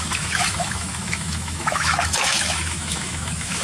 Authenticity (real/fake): fake